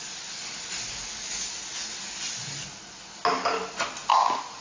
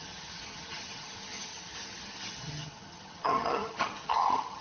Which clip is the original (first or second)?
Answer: first